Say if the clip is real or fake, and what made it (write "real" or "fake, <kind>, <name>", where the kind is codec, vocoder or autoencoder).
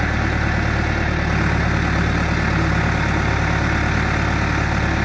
real